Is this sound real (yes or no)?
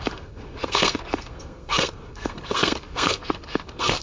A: no